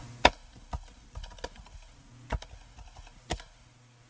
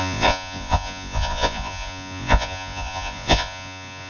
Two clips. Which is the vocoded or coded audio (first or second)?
second